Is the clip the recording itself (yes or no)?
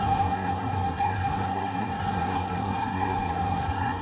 no